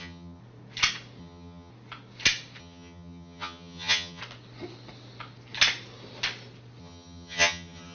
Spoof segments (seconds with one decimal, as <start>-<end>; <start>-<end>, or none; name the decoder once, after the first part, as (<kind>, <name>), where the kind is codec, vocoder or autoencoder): 0.0-0.4 (vocoder, HiFi-GAN); 1.2-1.7; 2.6-4.2; 6.8-7.9